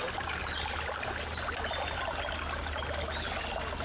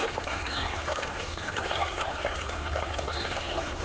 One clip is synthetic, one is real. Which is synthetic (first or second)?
second